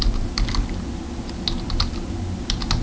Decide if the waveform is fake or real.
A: real